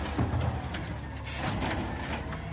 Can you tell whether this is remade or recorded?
recorded